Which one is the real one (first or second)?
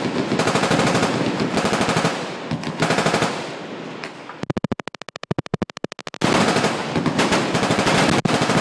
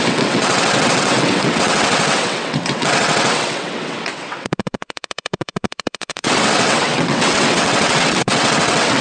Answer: first